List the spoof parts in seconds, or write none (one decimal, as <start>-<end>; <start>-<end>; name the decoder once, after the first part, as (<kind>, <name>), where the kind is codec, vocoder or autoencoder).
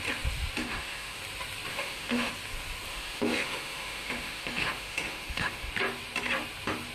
0.6-1.2 (autoencoder, DAC-VAE); 1.7-2.3; 2.9-5.7